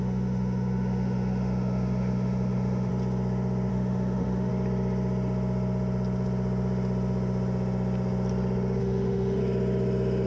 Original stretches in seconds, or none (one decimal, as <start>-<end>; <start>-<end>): 2.9-3.7; 4.5-8.8; 9.4-10.3